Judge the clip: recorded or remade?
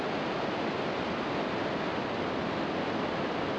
recorded